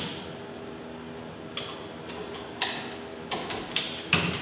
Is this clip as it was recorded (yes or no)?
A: yes